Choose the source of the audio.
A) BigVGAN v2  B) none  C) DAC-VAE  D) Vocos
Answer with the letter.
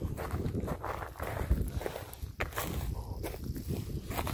B